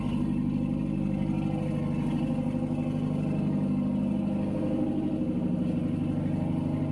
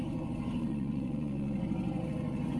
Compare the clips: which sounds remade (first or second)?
second